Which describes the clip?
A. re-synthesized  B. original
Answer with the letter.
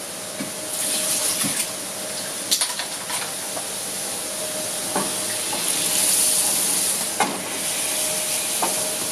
B